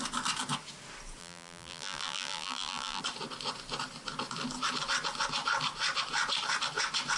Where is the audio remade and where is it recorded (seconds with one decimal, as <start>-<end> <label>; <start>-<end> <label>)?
0.0-1.2 recorded; 1.2-3.0 remade; 3.0-7.2 recorded

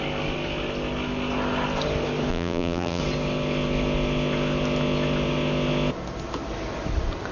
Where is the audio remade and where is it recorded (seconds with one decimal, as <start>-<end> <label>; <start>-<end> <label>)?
0.0-2.3 recorded; 2.3-3.0 remade; 3.0-7.3 recorded

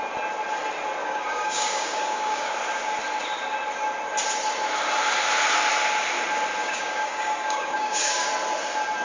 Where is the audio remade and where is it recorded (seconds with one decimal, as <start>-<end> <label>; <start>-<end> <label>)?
0.0-1.0 recorded; 1.0-2.5 remade; 2.5-6.6 recorded; 6.6-8.3 remade; 8.3-9.0 recorded

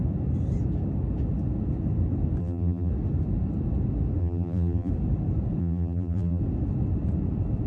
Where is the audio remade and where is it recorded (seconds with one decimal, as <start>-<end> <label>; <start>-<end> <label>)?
0.0-2.4 recorded; 2.4-2.9 remade; 2.9-4.2 recorded; 4.2-4.9 remade; 4.9-5.6 recorded; 5.6-6.4 remade; 6.4-7.7 recorded

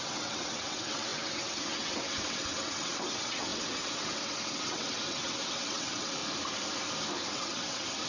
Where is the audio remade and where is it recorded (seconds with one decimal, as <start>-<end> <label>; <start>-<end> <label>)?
0.0-6.2 remade; 6.2-7.3 recorded; 7.3-8.1 remade

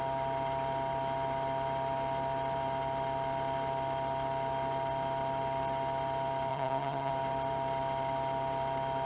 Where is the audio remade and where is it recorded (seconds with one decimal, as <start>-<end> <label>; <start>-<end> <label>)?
0.0-6.5 recorded; 6.5-7.1 remade; 7.1-9.1 recorded